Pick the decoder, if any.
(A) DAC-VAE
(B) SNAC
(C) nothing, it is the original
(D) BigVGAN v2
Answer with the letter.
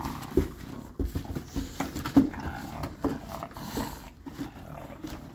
C